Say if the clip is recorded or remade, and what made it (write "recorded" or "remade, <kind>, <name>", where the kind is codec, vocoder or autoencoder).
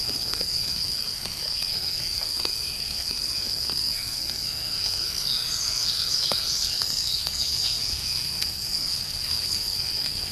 remade, codec, SNAC